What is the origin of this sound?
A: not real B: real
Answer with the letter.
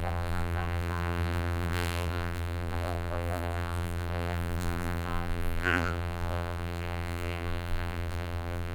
A